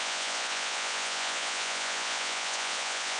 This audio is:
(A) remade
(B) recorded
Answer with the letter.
A